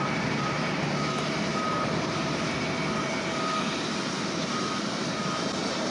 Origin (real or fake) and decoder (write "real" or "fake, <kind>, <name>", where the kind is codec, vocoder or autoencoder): real